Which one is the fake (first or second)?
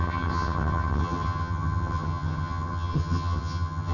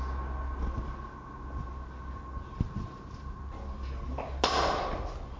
first